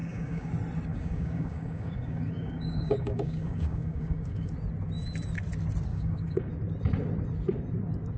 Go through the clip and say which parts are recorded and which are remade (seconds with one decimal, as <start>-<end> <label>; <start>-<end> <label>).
0.0-0.5 remade; 0.5-0.9 recorded; 0.9-4.5 remade; 4.5-5.9 recorded; 5.9-6.5 remade; 6.5-8.2 recorded